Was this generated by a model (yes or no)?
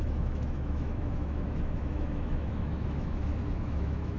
yes